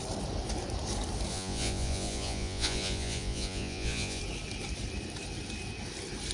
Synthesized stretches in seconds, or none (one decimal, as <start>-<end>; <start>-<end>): 1.3-4.2